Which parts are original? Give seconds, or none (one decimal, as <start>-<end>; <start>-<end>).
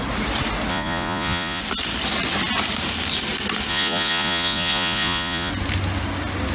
0.0-0.7; 1.6-3.7; 5.5-6.5